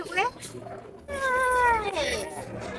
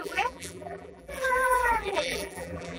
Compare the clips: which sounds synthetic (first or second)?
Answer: second